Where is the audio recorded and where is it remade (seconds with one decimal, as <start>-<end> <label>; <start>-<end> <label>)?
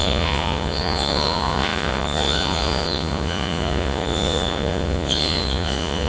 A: 0.0-6.1 remade